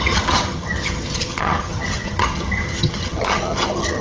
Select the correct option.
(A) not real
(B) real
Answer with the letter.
A